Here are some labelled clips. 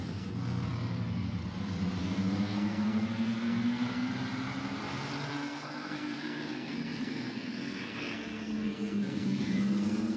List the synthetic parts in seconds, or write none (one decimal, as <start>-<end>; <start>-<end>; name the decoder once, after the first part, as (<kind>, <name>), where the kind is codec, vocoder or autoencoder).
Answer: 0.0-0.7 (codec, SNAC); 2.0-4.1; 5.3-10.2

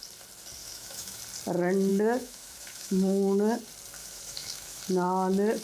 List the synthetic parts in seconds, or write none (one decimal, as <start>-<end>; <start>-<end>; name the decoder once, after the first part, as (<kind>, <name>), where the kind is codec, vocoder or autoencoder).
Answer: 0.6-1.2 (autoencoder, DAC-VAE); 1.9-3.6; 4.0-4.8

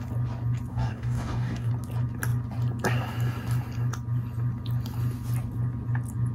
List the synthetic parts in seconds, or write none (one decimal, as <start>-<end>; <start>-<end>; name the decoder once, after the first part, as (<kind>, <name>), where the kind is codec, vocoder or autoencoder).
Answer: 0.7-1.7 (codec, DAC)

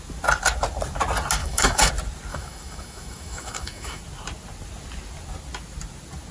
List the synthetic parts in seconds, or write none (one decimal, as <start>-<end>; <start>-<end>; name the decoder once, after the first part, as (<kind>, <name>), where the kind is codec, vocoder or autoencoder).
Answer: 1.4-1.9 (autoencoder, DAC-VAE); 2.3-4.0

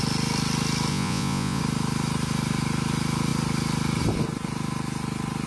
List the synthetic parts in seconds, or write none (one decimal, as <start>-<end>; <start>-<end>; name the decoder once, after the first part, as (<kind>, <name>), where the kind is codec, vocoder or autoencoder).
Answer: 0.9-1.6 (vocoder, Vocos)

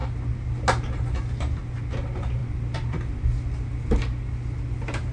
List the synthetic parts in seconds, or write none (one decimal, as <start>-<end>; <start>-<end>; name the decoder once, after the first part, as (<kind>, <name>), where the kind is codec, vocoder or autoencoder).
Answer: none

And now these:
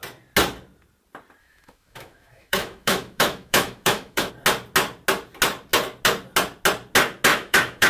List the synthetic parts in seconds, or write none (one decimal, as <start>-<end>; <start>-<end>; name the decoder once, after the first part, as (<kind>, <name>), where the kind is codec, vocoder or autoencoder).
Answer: 1.4-4.3 (autoencoder, DAC-VAE); 7.3-7.9

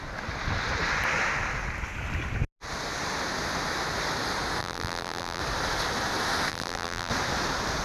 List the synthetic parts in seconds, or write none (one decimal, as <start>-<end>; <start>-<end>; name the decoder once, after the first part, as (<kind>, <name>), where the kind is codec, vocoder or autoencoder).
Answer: 4.6-5.4 (vocoder, BigVGAN v2); 6.5-7.1